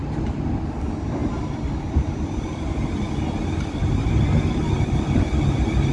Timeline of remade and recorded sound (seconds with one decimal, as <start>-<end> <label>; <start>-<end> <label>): 0.0-3.8 recorded; 3.8-4.6 remade; 4.6-5.9 recorded